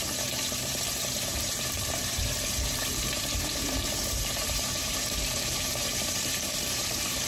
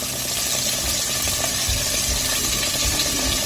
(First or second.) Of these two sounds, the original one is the second